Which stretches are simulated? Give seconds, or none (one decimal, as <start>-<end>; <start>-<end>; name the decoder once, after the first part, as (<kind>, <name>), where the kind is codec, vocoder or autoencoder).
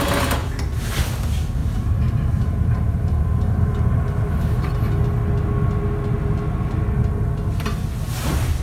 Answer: 1.6-4.9 (vocoder, BigVGAN v2)